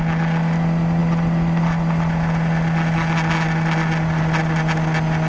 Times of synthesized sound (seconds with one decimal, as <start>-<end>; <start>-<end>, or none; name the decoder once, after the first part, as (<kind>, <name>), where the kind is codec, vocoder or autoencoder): none